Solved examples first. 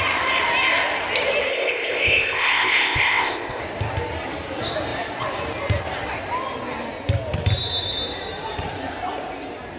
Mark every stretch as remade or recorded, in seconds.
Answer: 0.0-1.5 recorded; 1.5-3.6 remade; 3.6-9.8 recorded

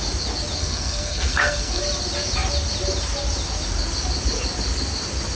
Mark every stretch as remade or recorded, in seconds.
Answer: 0.0-0.6 recorded; 0.6-1.8 remade; 1.8-5.3 recorded